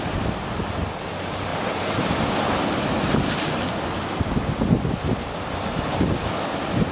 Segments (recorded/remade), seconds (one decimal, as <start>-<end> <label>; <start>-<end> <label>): 0.0-6.9 recorded

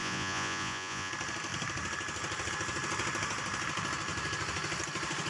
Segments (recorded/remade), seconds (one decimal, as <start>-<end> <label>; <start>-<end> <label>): 0.0-1.1 remade; 1.1-5.3 recorded

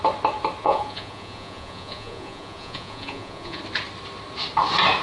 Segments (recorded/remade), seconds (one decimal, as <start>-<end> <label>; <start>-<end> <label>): 0.0-0.6 recorded; 0.6-3.6 remade; 3.6-5.0 recorded

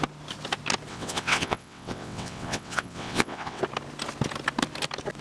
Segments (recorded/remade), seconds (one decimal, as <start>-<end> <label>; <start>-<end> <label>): 0.0-0.9 recorded; 0.9-3.6 remade; 3.6-5.2 recorded

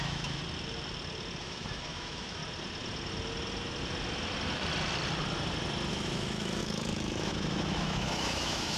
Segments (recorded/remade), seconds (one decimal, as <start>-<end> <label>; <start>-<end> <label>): 0.0-0.4 remade; 0.4-1.4 recorded; 1.4-2.4 remade; 2.4-5.9 recorded; 5.9-8.8 remade

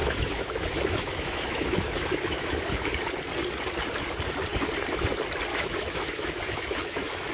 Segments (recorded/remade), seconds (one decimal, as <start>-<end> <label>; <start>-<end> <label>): 0.0-2.9 remade; 2.9-5.5 recorded; 5.5-7.3 remade